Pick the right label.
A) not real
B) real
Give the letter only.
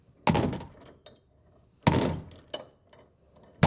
B